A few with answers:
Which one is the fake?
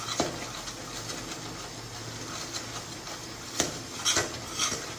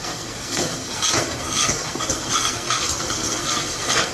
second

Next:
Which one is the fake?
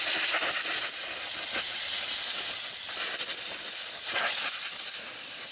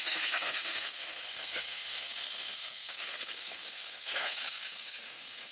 second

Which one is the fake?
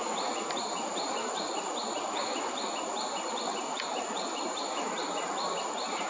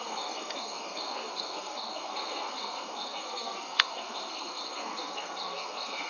second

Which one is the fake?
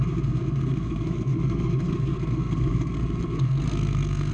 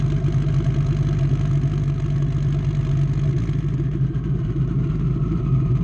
first